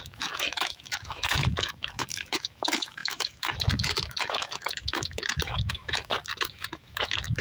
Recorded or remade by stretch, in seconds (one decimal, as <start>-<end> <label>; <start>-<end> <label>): 0.0-7.4 remade